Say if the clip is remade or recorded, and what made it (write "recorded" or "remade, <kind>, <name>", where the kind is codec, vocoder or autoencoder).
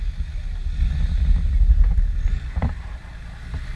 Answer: recorded